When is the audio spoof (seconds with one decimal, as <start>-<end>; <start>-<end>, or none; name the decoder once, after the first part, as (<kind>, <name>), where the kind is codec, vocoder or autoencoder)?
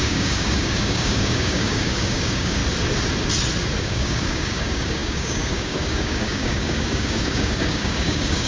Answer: 0.0-2.6 (codec, DAC); 3.8-8.5